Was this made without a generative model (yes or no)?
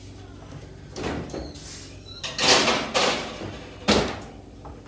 yes